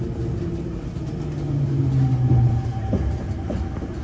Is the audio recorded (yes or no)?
yes